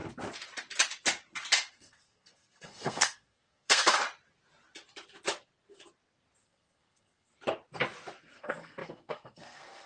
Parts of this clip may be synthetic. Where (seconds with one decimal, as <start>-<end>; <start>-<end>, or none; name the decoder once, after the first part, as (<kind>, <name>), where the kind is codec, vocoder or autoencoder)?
1.7-4.0 (codec, SNAC); 6.4-7.3; 8.3-9.9